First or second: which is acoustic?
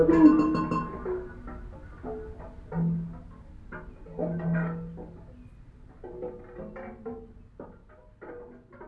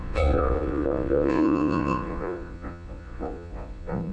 first